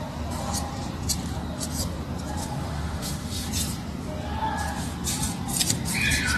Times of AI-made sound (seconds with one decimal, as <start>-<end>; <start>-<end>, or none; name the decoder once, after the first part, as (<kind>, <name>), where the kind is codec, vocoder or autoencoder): 2.4-3.5 (autoencoder, DAC-VAE)